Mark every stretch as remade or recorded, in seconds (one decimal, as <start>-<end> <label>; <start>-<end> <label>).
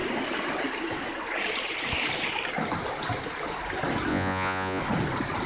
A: 0.0-4.1 recorded; 4.1-4.8 remade; 4.8-5.5 recorded